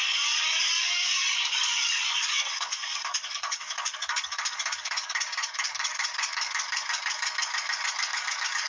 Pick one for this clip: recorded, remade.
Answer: remade